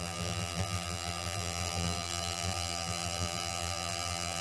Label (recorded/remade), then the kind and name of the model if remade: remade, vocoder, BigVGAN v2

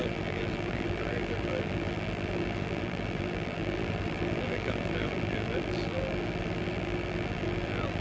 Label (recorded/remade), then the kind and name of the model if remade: remade, vocoder, BigVGAN v2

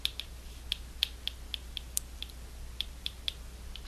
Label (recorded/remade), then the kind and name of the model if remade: recorded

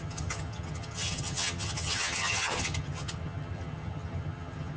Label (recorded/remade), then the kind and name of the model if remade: remade, vocoder, HiFi-GAN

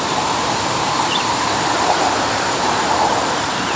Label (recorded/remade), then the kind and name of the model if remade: remade, vocoder, BigVGAN v2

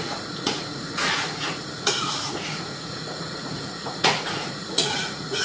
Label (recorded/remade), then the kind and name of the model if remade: remade, vocoder, Vocos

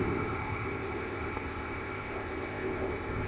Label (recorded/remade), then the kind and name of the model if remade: remade, codec, ZipCodec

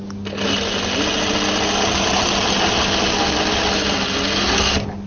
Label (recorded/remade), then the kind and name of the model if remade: recorded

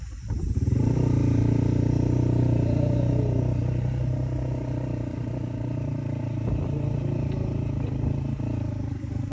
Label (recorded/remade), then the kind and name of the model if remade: recorded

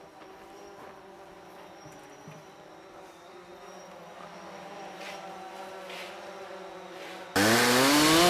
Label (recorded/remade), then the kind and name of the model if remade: recorded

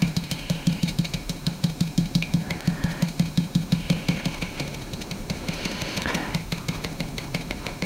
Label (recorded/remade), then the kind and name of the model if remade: remade, autoencoder, DAC-VAE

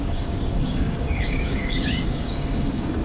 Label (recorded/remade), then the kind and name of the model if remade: remade, codec, DAC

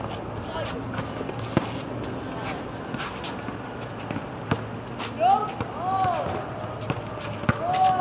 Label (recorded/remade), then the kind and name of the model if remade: recorded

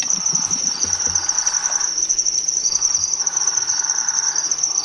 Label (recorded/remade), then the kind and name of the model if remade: remade, vocoder, BigVGAN v2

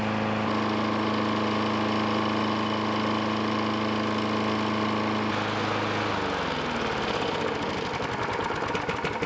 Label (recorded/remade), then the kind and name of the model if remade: recorded